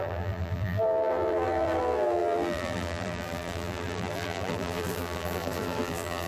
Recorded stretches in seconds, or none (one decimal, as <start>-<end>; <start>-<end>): none